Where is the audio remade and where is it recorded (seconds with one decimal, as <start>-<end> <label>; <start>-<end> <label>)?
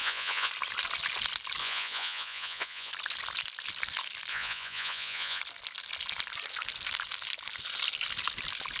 0.0-0.5 remade; 0.5-1.6 recorded; 1.6-2.9 remade; 2.9-4.3 recorded; 4.3-5.4 remade; 5.4-8.8 recorded